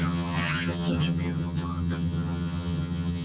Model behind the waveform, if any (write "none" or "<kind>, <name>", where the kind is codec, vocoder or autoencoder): vocoder, HiFi-GAN